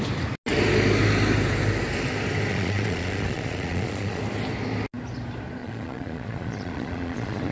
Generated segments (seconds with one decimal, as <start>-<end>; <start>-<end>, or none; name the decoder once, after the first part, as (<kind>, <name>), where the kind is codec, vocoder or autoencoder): 2.5-4.2 (vocoder, Vocos); 5.6-7.5